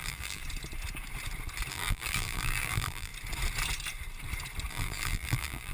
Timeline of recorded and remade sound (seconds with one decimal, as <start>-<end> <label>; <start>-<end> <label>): 0.0-0.4 remade; 0.4-1.7 recorded; 1.7-3.1 remade; 3.1-4.7 recorded; 4.7-5.7 remade